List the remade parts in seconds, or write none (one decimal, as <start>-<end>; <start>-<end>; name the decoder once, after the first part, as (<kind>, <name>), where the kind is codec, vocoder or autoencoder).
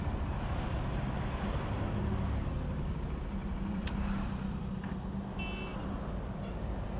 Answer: 3.4-4.9 (vocoder, BigVGAN v2)